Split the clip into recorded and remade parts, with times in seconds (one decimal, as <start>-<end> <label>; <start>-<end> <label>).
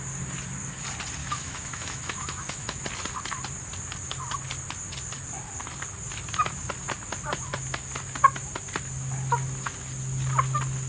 0.0-1.2 recorded; 1.2-2.8 remade; 2.8-10.9 recorded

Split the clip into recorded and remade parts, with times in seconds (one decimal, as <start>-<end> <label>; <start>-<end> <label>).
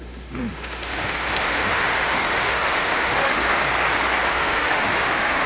0.0-3.6 remade; 3.6-4.3 recorded; 4.3-5.5 remade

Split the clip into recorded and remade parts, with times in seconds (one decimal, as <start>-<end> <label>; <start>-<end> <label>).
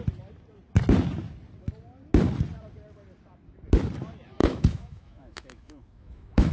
0.0-4.4 recorded; 4.4-6.5 remade